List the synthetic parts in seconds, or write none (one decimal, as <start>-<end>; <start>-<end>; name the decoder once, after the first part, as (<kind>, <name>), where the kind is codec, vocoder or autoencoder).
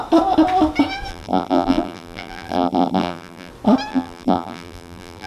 1.1-3.5 (vocoder, BigVGAN v2); 3.9-5.3